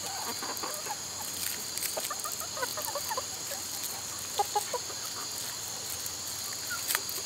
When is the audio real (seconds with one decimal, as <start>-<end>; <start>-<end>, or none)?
0.0-7.3